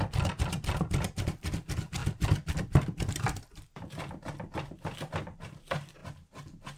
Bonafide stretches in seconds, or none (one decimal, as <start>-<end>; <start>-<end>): 0.0-6.8